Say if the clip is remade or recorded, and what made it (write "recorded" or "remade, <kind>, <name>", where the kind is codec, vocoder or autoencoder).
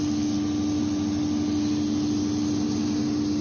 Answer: recorded